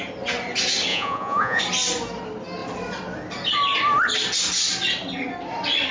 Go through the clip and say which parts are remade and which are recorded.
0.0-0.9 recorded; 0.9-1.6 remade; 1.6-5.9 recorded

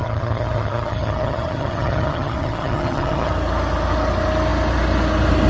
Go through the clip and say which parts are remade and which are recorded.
0.0-3.3 remade; 3.3-5.5 recorded

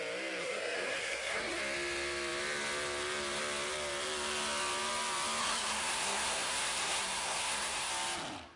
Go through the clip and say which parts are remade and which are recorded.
0.0-0.4 recorded; 0.4-1.6 remade; 1.6-5.4 recorded; 5.4-7.9 remade; 7.9-8.6 recorded

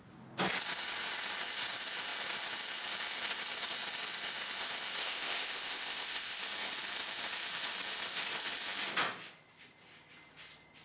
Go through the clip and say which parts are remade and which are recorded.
0.0-5.0 recorded; 5.0-6.4 remade; 6.4-10.8 recorded

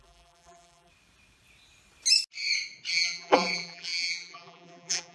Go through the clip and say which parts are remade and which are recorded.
0.0-0.9 remade; 0.9-2.9 recorded; 2.9-5.1 remade